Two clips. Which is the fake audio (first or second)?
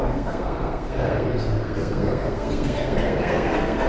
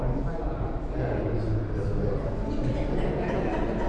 first